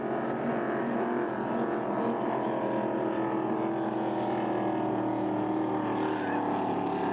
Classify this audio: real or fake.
real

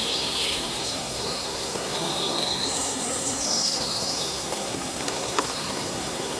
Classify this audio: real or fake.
fake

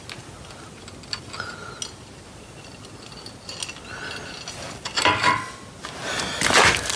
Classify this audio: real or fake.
real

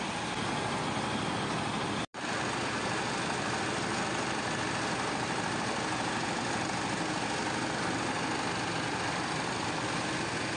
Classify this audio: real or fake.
real